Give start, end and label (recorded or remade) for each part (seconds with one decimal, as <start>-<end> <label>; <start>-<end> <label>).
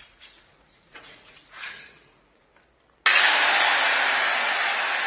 0.0-2.5 remade; 2.5-5.1 recorded